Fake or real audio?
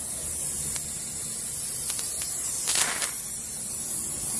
real